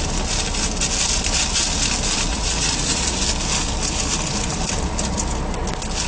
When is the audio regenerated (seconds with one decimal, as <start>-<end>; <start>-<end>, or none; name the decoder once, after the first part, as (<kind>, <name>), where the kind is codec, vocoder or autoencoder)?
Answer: 2.3-3.2 (vocoder, Vocos)